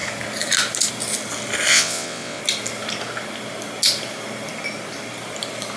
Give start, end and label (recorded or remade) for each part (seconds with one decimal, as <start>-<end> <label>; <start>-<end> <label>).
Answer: 0.0-1.7 recorded; 1.7-2.4 remade; 2.4-5.8 recorded

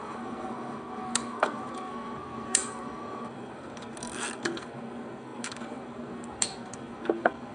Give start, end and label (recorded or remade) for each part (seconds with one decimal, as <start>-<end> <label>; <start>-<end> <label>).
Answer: 0.0-7.5 remade

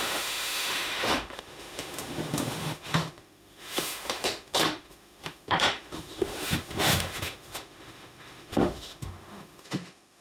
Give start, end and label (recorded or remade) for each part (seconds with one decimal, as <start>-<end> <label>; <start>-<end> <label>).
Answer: 0.0-10.2 remade